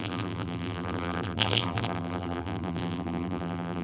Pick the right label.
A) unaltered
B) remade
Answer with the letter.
B